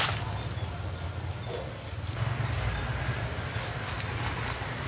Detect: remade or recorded recorded